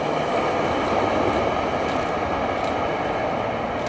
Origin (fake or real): real